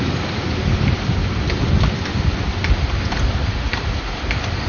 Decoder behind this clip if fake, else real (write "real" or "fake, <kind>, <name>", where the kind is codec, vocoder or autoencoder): real